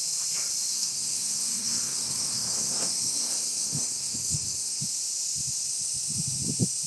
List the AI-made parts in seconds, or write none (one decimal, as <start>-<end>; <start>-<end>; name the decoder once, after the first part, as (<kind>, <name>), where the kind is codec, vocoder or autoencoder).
0.7-4.8 (codec, SNAC)